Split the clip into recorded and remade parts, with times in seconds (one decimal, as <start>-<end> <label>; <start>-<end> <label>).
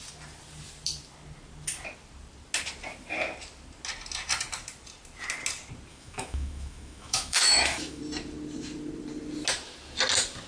0.0-5.9 recorded; 5.9-8.0 remade; 8.0-10.5 recorded